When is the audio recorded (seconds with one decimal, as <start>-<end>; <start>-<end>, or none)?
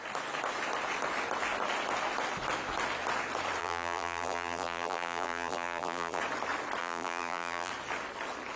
0.0-3.6; 6.2-6.8; 7.7-8.6